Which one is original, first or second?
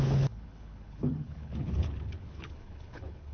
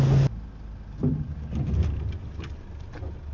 second